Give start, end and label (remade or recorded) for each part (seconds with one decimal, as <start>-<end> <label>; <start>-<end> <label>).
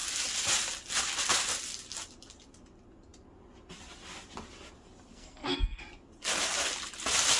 0.0-5.1 recorded; 5.1-5.8 remade; 5.8-7.4 recorded